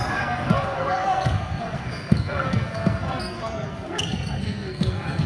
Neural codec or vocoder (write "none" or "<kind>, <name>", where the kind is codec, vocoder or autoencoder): codec, SNAC